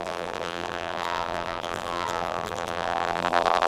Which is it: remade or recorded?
remade